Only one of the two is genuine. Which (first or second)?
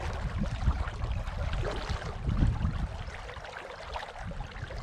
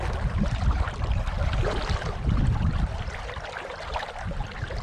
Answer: first